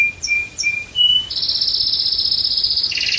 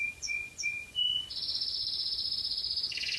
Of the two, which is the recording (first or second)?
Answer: first